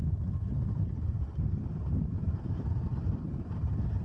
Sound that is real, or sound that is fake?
fake